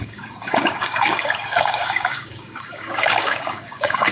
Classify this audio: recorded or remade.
remade